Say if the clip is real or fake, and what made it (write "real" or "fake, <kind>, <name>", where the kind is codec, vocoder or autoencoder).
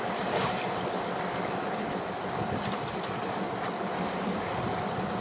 real